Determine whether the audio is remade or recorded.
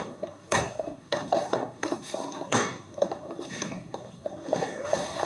remade